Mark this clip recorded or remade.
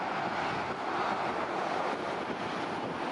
recorded